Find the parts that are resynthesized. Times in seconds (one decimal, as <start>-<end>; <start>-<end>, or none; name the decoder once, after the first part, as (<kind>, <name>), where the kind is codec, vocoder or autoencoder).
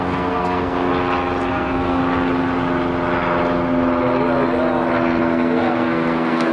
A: 0.0-0.9 (codec, SNAC); 1.5-2.0; 5.2-6.5